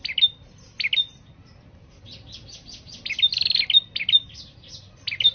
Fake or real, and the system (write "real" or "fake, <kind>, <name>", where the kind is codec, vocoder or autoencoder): real